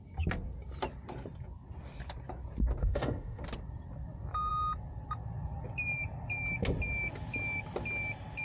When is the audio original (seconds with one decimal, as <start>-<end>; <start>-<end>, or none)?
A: 0.0-2.8; 3.4-8.4